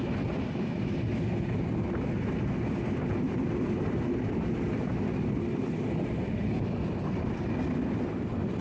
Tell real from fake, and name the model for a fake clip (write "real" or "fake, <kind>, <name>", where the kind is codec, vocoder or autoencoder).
real